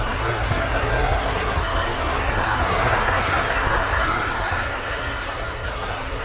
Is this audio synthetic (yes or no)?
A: yes